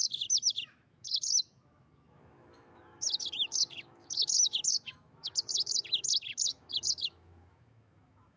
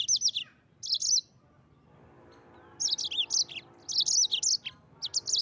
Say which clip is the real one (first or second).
second